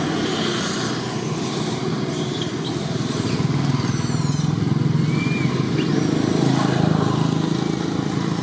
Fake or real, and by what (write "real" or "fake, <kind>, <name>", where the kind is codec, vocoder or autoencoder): real